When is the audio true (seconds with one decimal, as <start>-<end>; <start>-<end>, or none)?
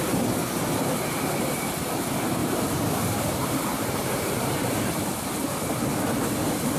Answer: 0.0-2.4; 5.8-6.8